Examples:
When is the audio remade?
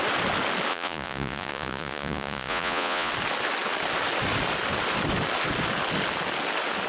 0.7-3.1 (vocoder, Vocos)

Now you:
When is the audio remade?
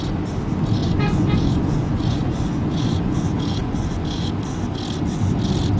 0.8-4.3 (vocoder, Vocos)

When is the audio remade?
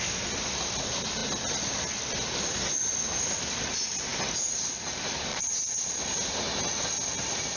5.3-6.0 (vocoder, Vocos)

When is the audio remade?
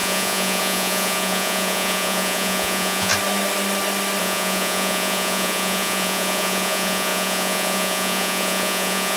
0.0-3.1 (vocoder, Vocos); 4.2-9.2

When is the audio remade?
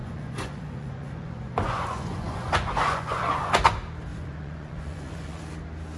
0.0-3.6 (vocoder, Vocos); 4.1-5.4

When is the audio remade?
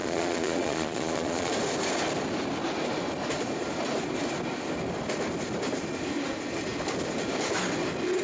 0.0-1.5 (vocoder, Vocos)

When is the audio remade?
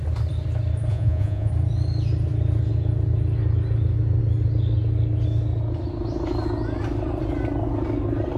0.9-1.5 (vocoder, Vocos)